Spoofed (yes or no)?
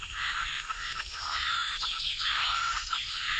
yes